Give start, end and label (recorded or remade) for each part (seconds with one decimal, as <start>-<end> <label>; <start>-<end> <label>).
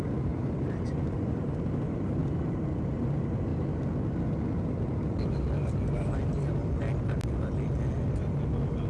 0.0-2.2 remade; 2.2-2.9 recorded; 2.9-3.5 remade; 3.5-8.9 recorded